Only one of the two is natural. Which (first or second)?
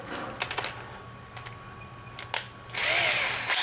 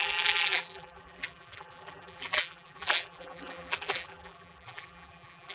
first